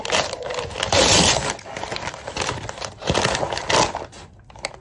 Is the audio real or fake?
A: real